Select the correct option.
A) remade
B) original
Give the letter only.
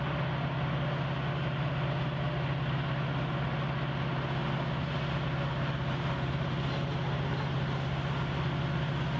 B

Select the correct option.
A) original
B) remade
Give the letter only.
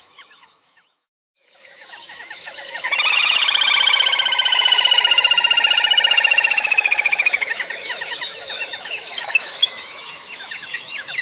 B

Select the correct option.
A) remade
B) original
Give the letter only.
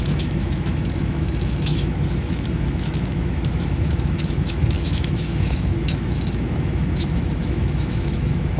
A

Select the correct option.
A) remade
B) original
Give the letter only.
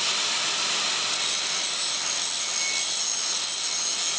B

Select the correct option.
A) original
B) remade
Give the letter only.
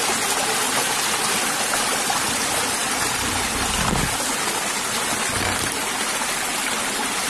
A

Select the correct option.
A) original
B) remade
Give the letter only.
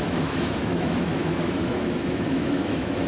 B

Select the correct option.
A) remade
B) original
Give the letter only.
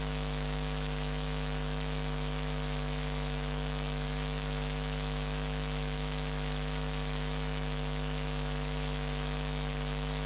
A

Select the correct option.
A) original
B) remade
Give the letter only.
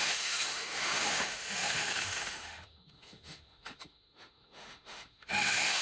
B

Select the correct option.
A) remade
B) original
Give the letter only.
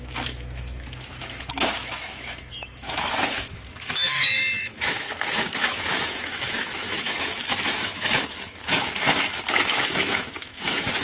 A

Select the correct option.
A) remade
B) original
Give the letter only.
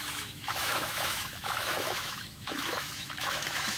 A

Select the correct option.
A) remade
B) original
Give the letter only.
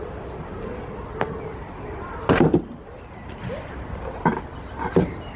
B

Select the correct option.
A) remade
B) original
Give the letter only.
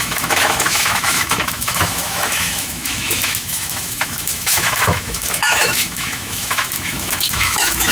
A